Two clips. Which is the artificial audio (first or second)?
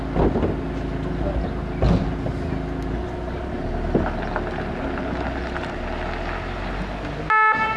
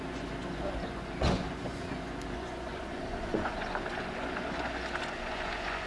second